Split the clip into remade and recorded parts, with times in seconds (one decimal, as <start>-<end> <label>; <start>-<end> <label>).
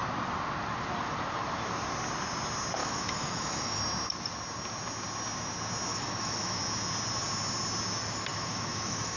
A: 0.0-2.8 recorded; 2.8-3.8 remade; 3.8-5.9 recorded; 5.9-6.6 remade; 6.6-8.3 recorded; 8.3-9.2 remade